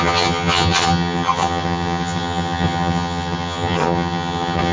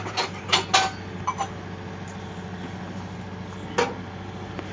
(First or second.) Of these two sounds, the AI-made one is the first